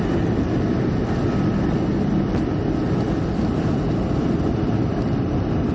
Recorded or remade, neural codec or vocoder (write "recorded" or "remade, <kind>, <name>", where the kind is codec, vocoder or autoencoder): recorded